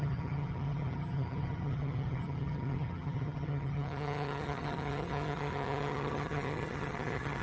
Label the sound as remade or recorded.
remade